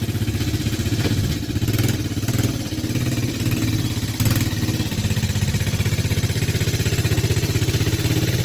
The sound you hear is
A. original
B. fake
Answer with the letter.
A